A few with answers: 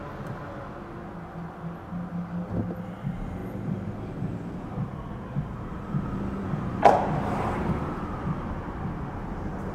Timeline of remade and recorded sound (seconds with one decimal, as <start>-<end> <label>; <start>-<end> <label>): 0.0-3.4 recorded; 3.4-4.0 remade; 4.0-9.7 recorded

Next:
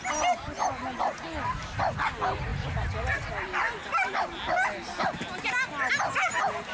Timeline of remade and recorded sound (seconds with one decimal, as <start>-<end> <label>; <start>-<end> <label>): 0.0-6.7 recorded

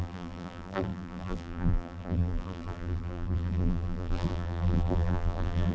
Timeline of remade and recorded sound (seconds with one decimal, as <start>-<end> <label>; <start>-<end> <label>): 0.0-5.7 remade

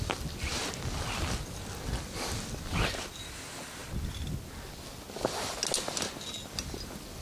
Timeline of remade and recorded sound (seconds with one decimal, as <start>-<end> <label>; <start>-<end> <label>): 0.0-7.2 recorded

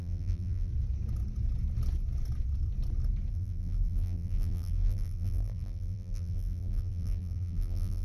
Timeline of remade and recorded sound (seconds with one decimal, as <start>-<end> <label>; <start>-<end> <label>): 0.0-0.7 remade; 0.7-3.3 recorded; 3.3-8.0 remade

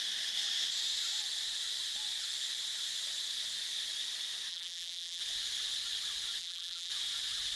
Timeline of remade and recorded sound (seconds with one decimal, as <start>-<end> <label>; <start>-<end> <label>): 0.0-4.5 recorded; 4.5-5.2 remade; 5.2-6.4 recorded; 6.4-6.9 remade; 6.9-7.6 recorded

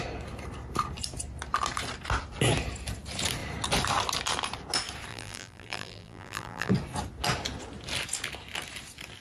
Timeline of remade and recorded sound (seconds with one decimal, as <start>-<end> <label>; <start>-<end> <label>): 0.0-5.1 recorded; 5.1-6.7 remade; 6.7-9.2 recorded